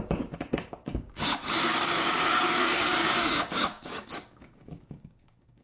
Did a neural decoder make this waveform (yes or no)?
yes